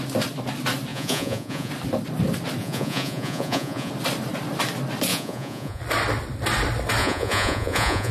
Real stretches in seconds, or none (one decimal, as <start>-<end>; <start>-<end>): 0.0-0.9; 1.7-2.6; 3.9-5.1; 5.8-7.0